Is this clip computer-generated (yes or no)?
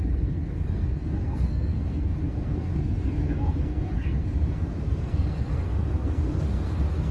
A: yes